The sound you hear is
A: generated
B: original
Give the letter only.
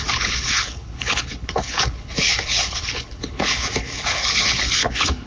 A